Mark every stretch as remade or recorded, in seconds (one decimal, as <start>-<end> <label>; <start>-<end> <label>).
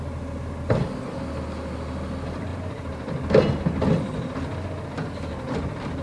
0.0-6.0 recorded